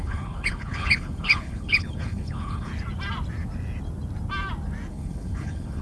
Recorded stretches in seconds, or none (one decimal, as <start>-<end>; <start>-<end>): 2.7-4.9